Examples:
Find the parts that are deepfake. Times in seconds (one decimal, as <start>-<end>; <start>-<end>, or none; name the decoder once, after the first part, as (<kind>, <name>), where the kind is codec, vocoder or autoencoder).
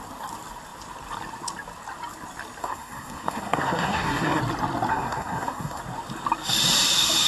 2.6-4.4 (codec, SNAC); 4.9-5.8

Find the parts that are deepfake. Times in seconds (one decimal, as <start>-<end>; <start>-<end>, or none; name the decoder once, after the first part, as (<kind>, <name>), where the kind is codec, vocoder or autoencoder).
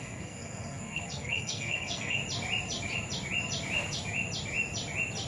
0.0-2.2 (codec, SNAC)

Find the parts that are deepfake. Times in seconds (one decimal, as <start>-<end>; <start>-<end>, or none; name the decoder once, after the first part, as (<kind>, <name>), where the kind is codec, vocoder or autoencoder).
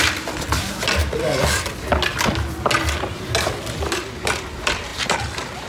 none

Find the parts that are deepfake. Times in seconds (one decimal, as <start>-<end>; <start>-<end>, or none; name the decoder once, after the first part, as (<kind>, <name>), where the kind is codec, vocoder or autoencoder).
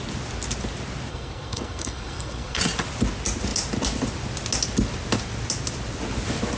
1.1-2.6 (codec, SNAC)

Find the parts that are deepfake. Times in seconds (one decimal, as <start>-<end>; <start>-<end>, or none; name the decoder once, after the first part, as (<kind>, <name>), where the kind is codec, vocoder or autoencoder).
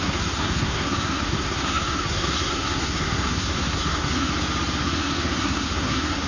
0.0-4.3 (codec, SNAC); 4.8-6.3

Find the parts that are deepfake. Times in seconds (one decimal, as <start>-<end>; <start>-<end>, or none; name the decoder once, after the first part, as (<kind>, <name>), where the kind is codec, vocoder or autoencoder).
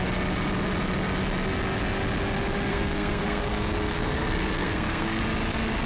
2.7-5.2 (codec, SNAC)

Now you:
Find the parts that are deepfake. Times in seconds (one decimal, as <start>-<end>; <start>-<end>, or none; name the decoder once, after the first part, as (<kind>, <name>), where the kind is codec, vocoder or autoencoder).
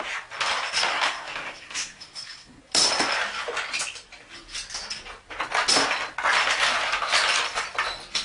0.9-2.6 (codec, SNAC)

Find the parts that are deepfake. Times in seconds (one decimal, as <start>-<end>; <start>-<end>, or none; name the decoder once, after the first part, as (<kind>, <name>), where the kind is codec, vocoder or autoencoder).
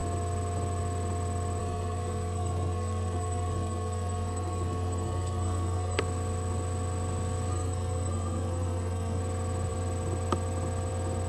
1.6-6.0 (codec, SNAC); 7.5-9.2